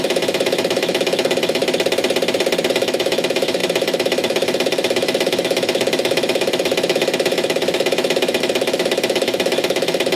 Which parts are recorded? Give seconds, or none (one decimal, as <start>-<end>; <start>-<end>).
1.6-2.7

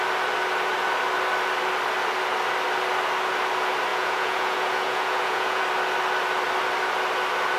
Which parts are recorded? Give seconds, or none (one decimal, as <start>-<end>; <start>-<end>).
0.0-3.9; 5.6-7.6

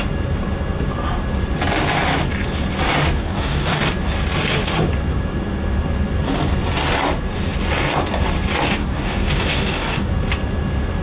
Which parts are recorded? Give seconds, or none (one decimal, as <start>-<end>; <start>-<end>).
0.0-3.2; 3.8-8.8; 10.1-11.0